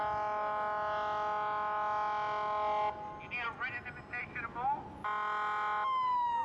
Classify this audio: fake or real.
real